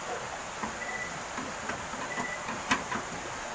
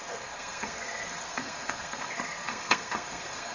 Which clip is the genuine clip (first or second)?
first